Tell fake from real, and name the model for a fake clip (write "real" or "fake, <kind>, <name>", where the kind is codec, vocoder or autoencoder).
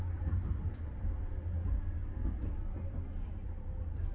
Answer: real